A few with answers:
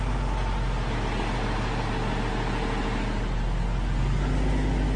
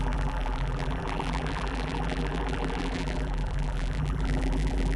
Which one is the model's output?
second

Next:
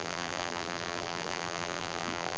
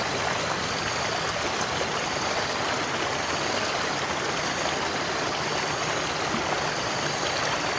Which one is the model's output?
first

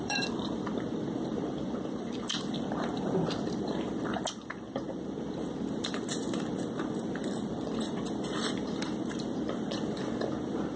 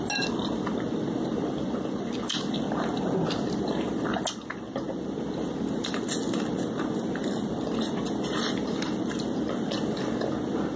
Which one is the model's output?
first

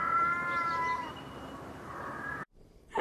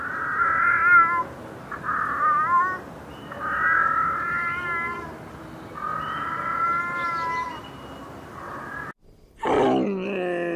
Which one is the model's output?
first